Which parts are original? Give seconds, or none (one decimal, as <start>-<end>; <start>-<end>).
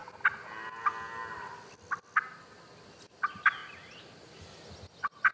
0.0-5.3